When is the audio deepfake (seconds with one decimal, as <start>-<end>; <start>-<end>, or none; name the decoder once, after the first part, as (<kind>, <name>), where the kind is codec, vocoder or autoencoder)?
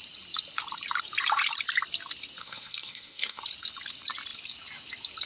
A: 2.4-3.4 (codec, SNAC)